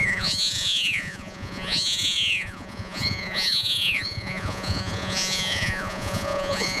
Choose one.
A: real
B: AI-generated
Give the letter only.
B